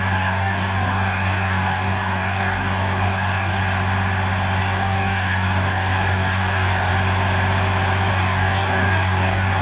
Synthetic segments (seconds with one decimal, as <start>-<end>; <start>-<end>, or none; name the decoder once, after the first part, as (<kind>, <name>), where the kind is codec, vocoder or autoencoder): 0.0-3.6 (codec, DAC); 4.6-6.9; 8.1-9.6